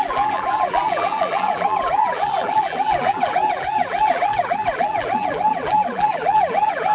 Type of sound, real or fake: fake